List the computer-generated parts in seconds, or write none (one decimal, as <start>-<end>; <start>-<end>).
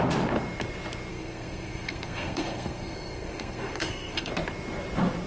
1.1-4.3